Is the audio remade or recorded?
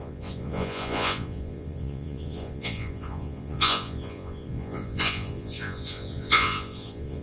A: remade